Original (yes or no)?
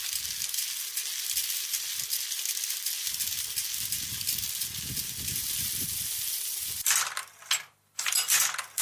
yes